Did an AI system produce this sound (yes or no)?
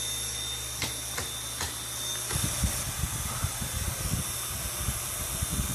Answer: no